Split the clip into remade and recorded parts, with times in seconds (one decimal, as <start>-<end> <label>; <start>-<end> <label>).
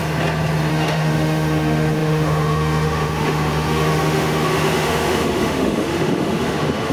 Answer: 0.0-0.7 recorded; 0.7-6.9 remade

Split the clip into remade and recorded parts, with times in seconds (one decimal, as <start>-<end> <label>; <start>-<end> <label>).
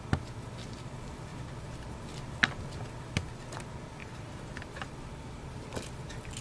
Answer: 0.0-4.0 recorded; 4.0-5.6 remade; 5.6-6.4 recorded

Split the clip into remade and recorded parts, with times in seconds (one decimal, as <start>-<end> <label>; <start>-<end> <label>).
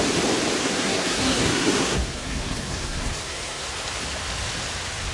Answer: 0.0-0.6 recorded; 0.6-3.7 remade; 3.7-5.1 recorded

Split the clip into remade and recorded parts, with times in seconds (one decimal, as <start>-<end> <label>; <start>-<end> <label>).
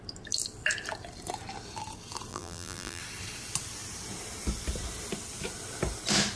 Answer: 0.0-2.3 recorded; 2.3-3.0 remade; 3.0-6.4 recorded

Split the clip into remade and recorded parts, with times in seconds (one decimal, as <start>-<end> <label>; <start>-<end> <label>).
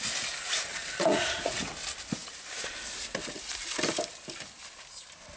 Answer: 0.0-0.7 recorded; 0.7-1.7 remade; 1.7-5.4 recorded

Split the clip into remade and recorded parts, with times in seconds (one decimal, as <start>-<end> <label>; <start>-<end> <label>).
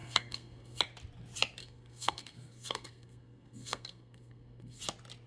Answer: 0.0-0.8 remade; 0.8-1.6 recorded; 1.6-4.8 remade; 4.8-5.3 recorded